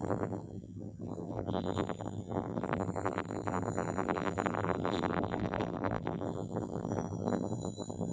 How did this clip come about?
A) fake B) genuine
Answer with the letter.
A